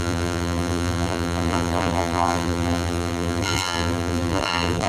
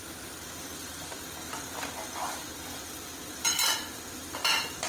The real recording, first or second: second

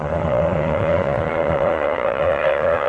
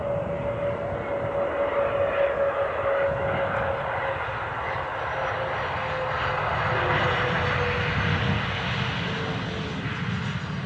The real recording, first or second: second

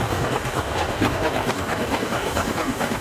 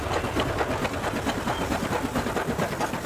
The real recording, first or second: second